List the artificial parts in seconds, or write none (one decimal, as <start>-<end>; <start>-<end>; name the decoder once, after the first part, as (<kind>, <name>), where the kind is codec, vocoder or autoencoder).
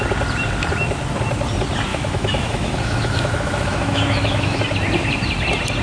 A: 1.9-4.6 (autoencoder, DAC-VAE)